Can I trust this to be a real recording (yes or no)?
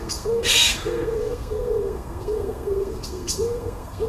no